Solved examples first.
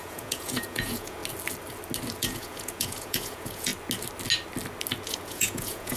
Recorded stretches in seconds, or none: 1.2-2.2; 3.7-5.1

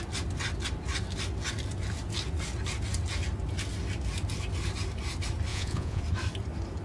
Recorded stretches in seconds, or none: 0.0-5.5; 6.0-6.8